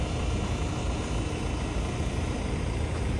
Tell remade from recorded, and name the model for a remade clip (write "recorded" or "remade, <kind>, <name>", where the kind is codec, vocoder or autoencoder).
recorded